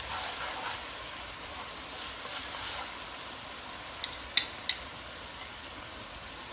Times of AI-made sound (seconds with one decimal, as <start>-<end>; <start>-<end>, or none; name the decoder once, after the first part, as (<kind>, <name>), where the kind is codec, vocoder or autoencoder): none